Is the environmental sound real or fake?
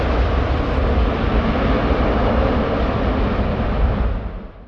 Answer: real